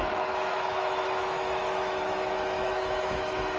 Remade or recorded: remade